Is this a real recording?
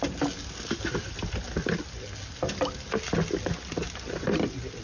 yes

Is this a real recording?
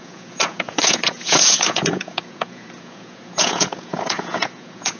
no